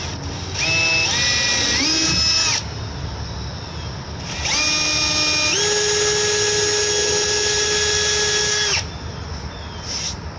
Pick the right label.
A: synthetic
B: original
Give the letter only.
B